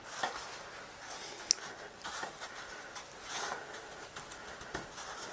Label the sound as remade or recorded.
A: recorded